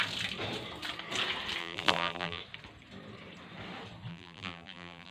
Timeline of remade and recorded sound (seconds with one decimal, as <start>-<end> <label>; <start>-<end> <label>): 0.0-1.6 recorded; 1.6-2.4 remade; 2.4-4.1 recorded; 4.1-5.1 remade